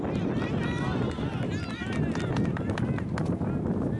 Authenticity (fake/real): real